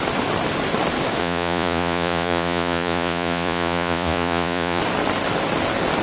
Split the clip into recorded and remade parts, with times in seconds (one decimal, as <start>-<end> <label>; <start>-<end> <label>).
0.0-1.2 recorded; 1.2-4.8 remade; 4.8-6.0 recorded